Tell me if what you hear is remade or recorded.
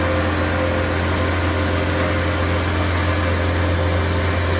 recorded